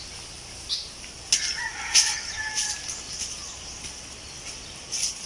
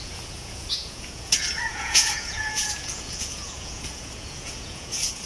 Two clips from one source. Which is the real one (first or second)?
first